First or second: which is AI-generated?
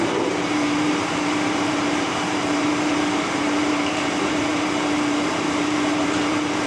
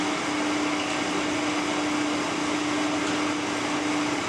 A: first